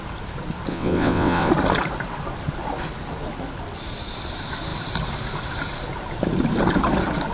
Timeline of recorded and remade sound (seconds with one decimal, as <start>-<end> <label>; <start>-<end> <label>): 0.0-0.7 recorded; 0.7-1.5 remade; 1.5-7.3 recorded